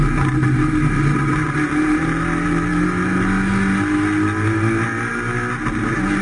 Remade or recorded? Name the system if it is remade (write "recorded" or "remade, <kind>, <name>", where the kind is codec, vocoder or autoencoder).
recorded